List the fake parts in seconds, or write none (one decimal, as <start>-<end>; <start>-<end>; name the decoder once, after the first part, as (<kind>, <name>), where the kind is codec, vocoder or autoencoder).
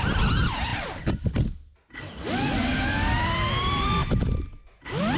none